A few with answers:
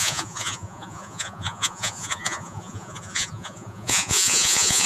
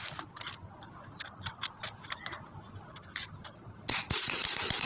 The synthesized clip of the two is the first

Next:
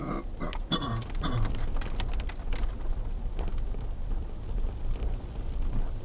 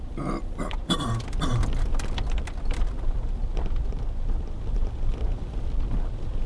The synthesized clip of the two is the second